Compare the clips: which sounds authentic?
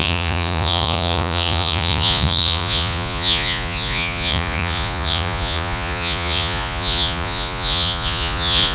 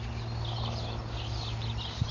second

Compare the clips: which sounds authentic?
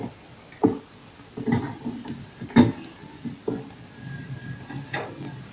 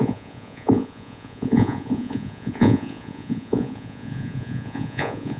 first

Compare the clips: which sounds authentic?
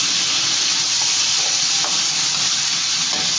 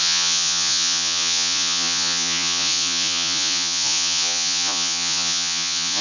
first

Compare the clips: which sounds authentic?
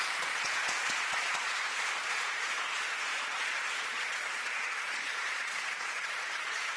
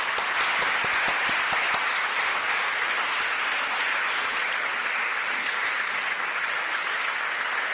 second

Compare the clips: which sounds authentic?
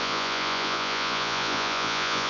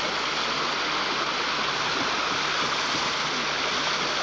second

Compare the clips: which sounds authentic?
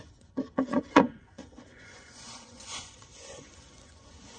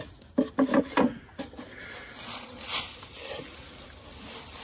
second